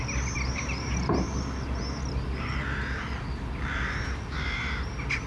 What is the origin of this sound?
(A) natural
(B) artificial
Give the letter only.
A